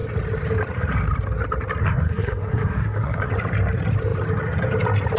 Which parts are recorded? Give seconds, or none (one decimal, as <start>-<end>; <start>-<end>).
0.0-1.8; 3.3-5.2